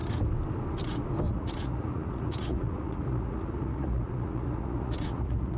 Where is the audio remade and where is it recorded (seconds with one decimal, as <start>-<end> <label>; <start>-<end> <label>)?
0.0-1.3 recorded; 1.3-5.6 remade